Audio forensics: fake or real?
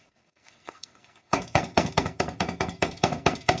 fake